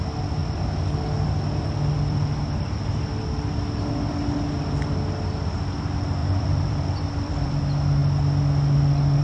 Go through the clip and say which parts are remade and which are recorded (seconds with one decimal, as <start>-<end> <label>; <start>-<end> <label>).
0.0-6.2 recorded; 6.2-7.6 remade; 7.6-9.2 recorded